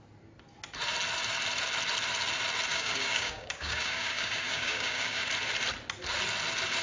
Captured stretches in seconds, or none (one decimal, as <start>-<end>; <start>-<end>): 0.0-2.7; 5.3-6.8